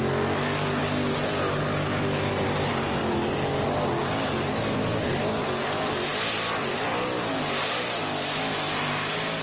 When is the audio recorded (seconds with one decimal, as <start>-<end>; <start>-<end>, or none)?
0.0-9.4